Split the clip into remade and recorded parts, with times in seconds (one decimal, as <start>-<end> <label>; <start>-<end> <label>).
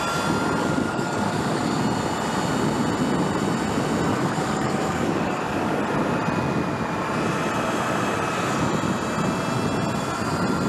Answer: 0.0-0.6 recorded; 0.6-1.8 remade; 1.8-4.1 recorded; 4.1-5.8 remade; 5.8-10.7 recorded